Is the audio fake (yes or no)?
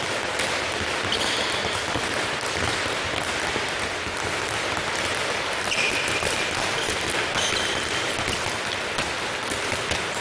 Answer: no